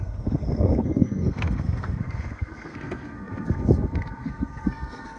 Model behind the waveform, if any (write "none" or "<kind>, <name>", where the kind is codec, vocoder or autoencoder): codec, SNAC